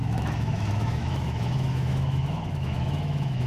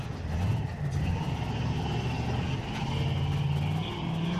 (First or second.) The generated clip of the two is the first